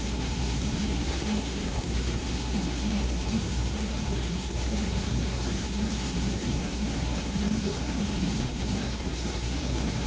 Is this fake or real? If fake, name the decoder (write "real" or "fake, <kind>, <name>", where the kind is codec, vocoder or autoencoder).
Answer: fake, codec, SNAC